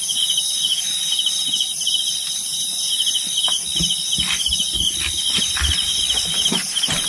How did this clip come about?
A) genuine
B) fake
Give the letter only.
A